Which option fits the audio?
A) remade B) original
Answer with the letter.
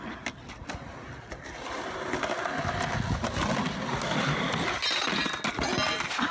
B